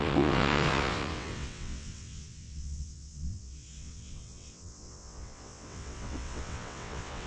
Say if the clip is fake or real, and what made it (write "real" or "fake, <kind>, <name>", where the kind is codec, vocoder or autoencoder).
fake, vocoder, WaveNeXt